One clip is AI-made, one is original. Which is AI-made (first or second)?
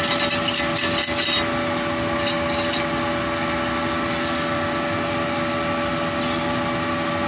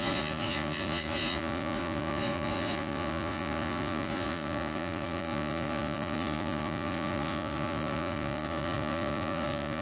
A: second